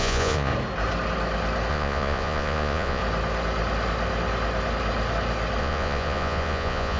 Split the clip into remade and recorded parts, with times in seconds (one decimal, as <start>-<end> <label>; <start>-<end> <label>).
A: 0.0-0.5 remade; 0.5-1.7 recorded; 1.7-3.0 remade; 3.0-5.6 recorded; 5.6-7.0 remade